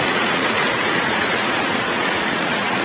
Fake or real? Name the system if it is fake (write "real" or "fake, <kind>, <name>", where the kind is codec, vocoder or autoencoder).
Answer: fake, vocoder, Vocos